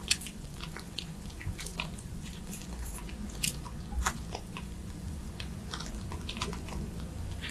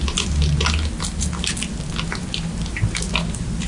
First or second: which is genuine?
second